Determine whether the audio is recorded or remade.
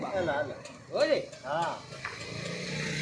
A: recorded